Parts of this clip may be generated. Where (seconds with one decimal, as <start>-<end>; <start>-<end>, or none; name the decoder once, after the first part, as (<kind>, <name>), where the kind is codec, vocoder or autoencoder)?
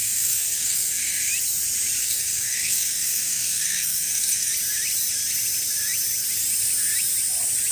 0.0-1.3 (codec, SNAC); 2.0-4.5